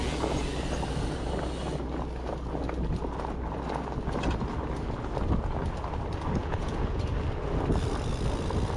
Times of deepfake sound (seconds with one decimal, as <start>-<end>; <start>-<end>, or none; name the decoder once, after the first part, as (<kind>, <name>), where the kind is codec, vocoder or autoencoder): 6.4-7.0 (vocoder, Vocos)